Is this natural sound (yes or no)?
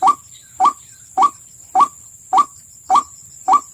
no